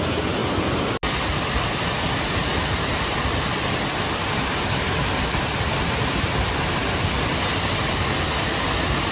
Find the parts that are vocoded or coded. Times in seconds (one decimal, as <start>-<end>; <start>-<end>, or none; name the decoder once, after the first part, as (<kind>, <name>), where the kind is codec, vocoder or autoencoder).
none